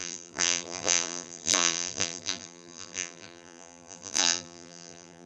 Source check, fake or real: fake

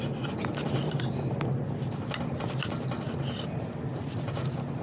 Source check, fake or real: real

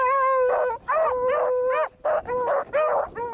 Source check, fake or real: real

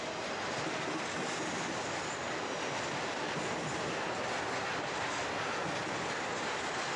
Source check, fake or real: real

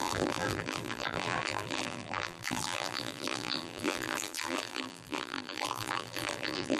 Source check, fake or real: fake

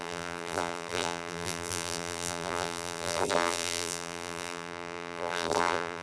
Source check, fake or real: fake